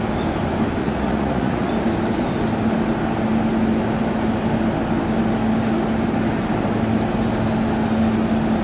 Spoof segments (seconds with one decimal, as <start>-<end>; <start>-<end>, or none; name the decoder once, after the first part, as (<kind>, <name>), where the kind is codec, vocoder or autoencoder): 0.8-1.7 (vocoder, Vocos)